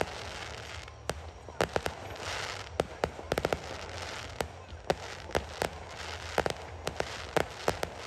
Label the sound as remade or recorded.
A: recorded